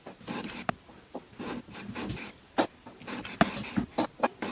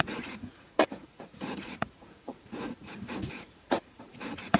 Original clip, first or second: first